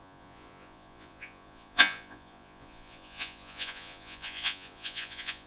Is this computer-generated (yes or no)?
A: yes